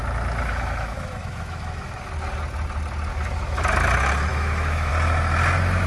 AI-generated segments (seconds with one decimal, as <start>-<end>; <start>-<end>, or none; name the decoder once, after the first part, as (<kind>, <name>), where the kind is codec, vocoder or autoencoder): 0.5-2.1 (autoencoder, DAC-VAE); 3.1-3.6; 4.3-4.9